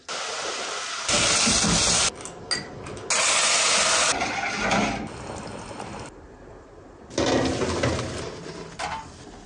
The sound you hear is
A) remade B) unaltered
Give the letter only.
B